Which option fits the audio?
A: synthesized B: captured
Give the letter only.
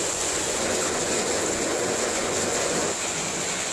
A